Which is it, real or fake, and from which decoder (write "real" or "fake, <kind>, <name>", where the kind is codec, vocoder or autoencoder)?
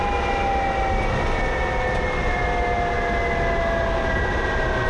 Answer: real